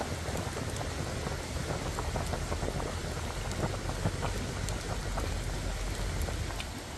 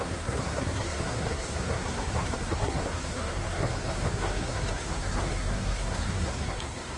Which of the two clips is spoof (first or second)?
second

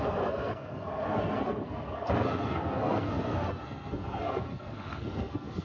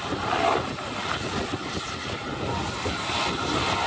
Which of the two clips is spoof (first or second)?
first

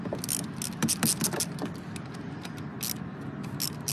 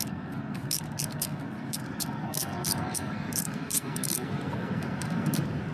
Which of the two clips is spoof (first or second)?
second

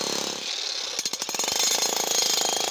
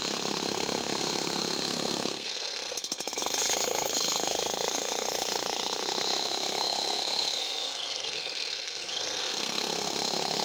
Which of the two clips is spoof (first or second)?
second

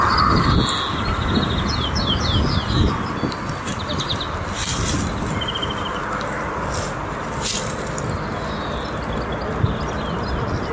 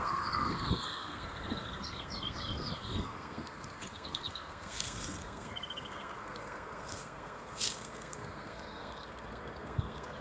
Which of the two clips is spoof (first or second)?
second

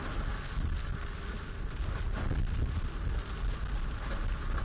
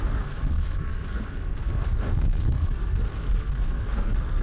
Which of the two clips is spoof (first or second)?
second